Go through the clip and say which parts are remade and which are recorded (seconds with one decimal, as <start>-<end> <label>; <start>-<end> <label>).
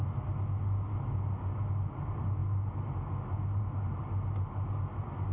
0.0-5.3 recorded